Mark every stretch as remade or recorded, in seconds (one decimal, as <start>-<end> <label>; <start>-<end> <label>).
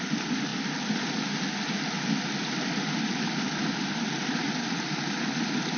0.0-5.8 recorded